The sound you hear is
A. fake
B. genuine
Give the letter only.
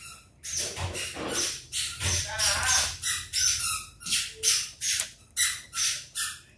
B